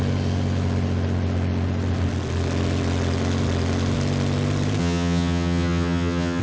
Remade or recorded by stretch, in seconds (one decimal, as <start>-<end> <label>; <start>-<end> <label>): 0.0-4.8 recorded; 4.8-6.4 remade